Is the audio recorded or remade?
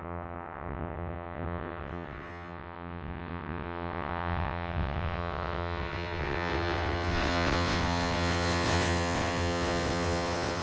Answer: remade